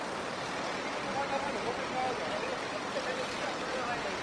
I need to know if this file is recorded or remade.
recorded